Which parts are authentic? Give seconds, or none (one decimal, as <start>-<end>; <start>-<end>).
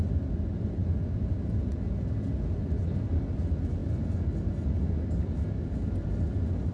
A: 0.0-6.7